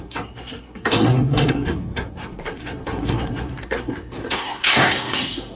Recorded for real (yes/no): no